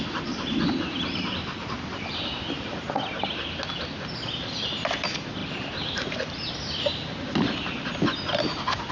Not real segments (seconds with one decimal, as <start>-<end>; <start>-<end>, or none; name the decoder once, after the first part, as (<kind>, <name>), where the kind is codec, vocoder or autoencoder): 1.9-2.8 (vocoder, BigVGAN v2); 5.4-6.5